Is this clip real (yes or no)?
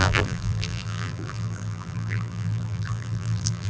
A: no